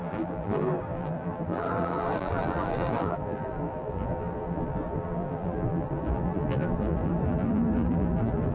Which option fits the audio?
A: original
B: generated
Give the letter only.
B